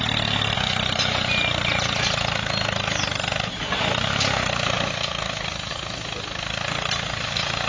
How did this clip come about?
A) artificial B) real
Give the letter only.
B